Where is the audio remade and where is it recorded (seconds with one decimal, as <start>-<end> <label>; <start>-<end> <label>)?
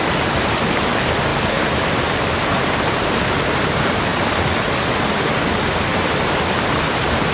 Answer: 0.0-7.3 recorded